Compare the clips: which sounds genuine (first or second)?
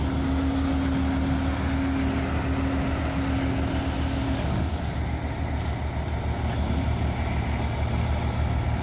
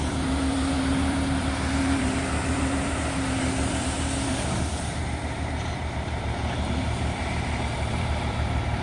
first